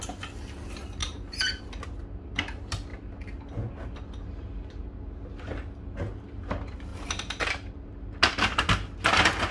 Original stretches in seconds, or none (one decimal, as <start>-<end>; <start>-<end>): 0.0-1.0; 1.6-6.9; 8.2-9.5